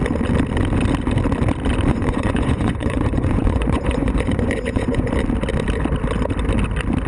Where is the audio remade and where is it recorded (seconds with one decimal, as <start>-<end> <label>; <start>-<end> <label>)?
0.0-1.9 recorded; 1.9-5.1 remade; 5.1-7.1 recorded